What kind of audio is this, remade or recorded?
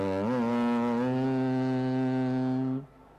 recorded